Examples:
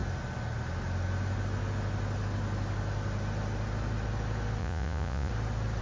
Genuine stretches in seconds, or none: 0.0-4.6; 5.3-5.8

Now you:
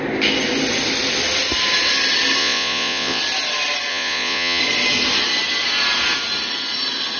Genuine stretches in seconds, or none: 0.0-2.4; 3.2-3.9; 4.6-7.2

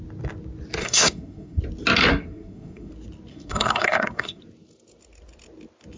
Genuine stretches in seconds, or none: 0.0-0.8; 1.6-2.1; 2.9-3.3; 4.4-6.0